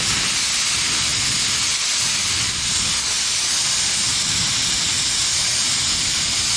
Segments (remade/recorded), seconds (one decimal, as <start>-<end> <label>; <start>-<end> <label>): 0.0-6.6 recorded

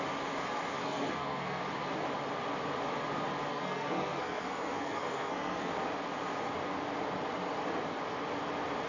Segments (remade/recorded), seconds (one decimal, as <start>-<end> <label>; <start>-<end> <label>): 0.0-0.8 recorded; 0.8-1.6 remade; 1.6-3.5 recorded; 3.5-5.7 remade; 5.7-8.9 recorded

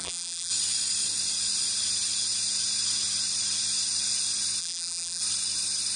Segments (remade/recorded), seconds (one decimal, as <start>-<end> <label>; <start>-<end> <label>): 0.0-0.5 remade; 0.5-4.6 recorded; 4.6-5.2 remade; 5.2-6.0 recorded

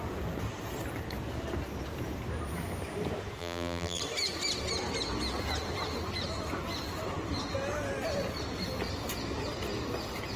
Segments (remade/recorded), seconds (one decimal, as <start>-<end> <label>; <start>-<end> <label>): 0.0-3.4 recorded; 3.4-4.0 remade; 4.0-10.4 recorded

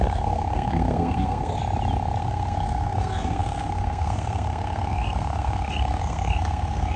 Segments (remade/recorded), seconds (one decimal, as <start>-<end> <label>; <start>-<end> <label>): 0.0-1.6 remade; 1.6-2.2 recorded; 2.2-7.0 remade

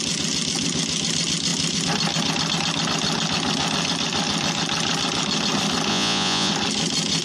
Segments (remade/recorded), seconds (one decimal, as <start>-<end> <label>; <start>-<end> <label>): 0.0-5.9 recorded; 5.9-6.5 remade; 6.5-7.2 recorded

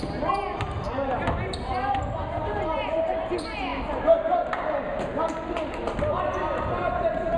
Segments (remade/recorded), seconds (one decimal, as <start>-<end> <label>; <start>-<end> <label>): 0.0-7.4 recorded

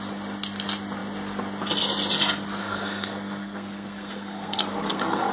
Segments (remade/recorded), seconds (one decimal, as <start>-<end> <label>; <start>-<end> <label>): 0.0-2.6 recorded; 2.6-5.3 remade